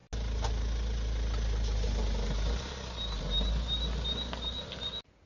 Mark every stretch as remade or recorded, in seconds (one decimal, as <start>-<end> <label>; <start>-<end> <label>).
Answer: 0.0-5.3 recorded